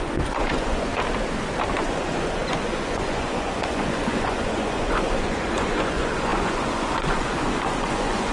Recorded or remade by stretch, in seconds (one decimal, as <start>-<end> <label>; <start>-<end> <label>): 0.0-0.9 remade; 0.9-1.8 recorded; 1.8-8.3 remade